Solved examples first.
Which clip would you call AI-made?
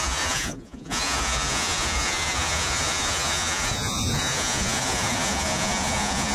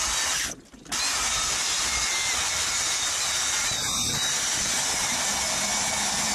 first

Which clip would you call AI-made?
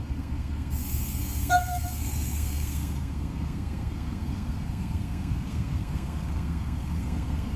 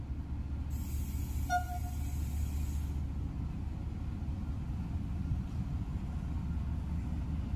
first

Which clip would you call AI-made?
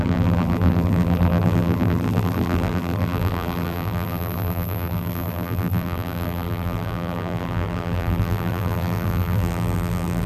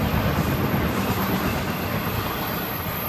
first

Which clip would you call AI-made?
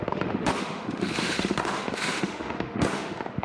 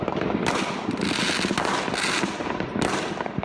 first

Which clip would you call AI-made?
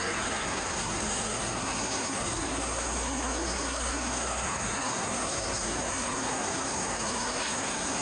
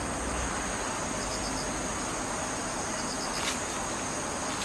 first